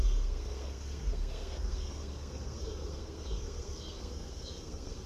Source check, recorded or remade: remade